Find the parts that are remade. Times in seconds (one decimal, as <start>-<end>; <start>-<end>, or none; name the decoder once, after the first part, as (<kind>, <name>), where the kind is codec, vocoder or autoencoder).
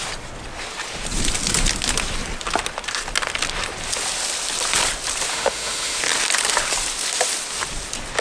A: 5.3-6.0 (autoencoder, DAC-VAE)